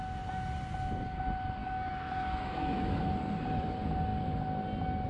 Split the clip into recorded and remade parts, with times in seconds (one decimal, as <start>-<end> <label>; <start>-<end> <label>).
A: 0.0-1.6 recorded; 1.6-3.0 remade; 3.0-5.1 recorded

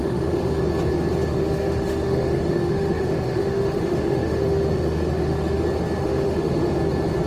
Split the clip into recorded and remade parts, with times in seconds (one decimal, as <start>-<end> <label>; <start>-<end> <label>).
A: 0.0-0.6 remade; 0.6-1.3 recorded; 1.3-5.6 remade; 5.6-6.0 recorded; 6.0-6.7 remade; 6.7-7.3 recorded

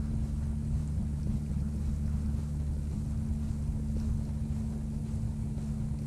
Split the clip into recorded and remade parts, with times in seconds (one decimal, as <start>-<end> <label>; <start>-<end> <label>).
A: 0.0-6.1 recorded

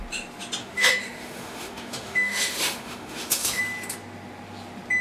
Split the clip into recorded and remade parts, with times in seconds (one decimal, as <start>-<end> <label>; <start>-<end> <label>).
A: 0.0-0.6 recorded; 0.6-3.6 remade; 3.6-5.0 recorded